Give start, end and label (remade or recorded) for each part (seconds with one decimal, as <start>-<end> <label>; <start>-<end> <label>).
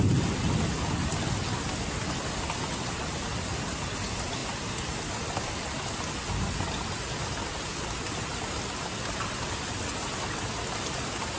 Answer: 0.0-11.4 recorded